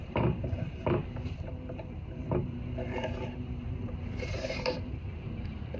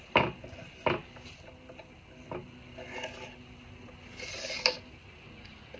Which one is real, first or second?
second